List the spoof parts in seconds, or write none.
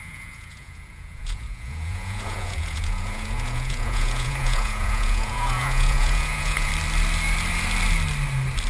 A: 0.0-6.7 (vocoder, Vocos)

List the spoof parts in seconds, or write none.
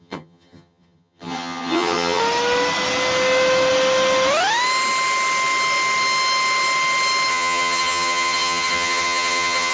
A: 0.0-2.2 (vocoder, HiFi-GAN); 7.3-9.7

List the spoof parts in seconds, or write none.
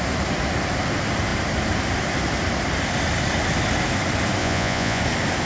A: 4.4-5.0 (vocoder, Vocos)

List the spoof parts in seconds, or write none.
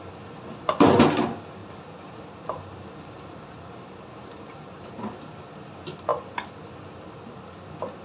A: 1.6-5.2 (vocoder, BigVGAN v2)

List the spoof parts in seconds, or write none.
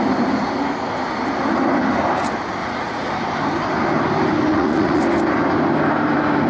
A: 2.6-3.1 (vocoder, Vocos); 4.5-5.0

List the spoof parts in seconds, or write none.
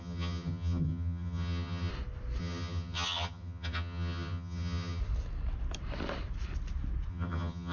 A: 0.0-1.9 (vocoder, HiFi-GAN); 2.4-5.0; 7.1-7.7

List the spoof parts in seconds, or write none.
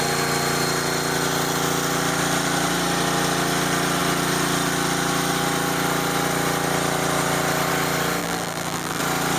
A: 8.2-9.0 (vocoder, BigVGAN v2)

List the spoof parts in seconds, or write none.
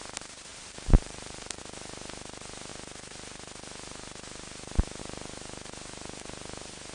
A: 0.5-1.6 (vocoder, BigVGAN v2)